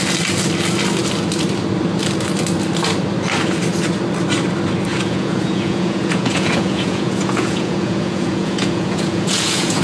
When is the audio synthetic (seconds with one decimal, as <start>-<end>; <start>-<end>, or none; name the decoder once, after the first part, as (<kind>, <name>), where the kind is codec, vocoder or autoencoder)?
4.9-9.8 (vocoder, Vocos)